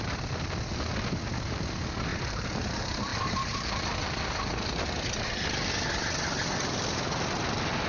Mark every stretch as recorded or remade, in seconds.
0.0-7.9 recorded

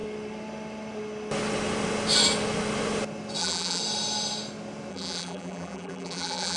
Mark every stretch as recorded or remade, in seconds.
0.0-3.4 recorded; 3.4-3.8 remade; 3.8-4.9 recorded; 4.9-6.6 remade

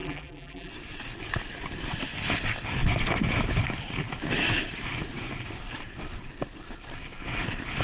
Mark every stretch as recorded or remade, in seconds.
0.0-0.7 remade; 0.7-7.8 recorded

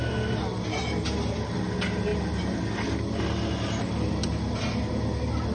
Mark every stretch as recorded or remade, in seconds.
0.0-5.5 recorded

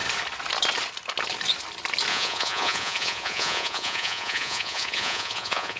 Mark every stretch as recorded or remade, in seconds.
0.0-2.1 recorded; 2.1-5.8 remade

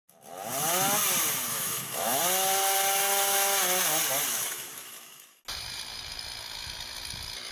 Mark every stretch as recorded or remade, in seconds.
0.0-1.5 recorded; 1.5-2.2 remade; 2.2-4.3 recorded; 4.3-5.4 remade; 5.4-7.5 recorded